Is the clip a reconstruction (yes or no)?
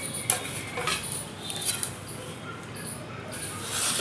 no